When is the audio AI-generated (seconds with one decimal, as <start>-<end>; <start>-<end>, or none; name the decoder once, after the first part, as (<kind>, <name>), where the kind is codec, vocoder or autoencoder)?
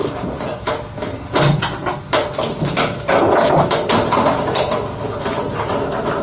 none